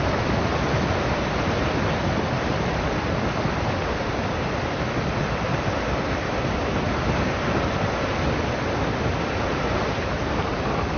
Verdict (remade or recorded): recorded